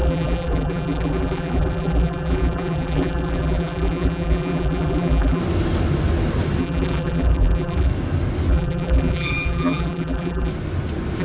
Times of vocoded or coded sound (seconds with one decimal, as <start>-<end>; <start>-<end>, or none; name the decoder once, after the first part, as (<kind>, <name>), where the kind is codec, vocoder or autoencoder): 0.0-5.4 (vocoder, BigVGAN v2); 6.6-7.9; 8.5-10.5